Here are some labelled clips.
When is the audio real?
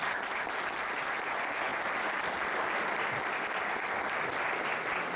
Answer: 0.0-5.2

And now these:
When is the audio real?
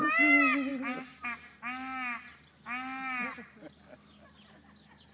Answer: 0.0-5.1